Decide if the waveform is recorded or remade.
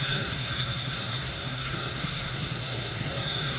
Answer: remade